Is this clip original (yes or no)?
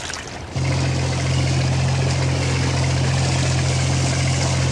yes